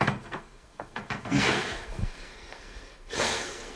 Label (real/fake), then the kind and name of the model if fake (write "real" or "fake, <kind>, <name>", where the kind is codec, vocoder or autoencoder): fake, codec, SNAC